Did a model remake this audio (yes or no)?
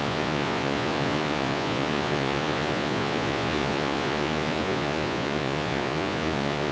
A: yes